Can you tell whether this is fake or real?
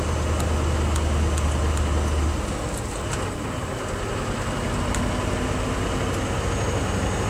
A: real